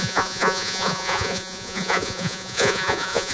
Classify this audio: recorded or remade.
remade